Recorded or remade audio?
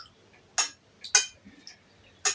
recorded